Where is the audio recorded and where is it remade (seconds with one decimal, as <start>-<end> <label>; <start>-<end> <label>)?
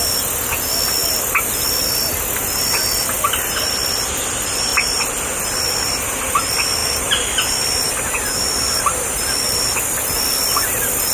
0.0-11.1 recorded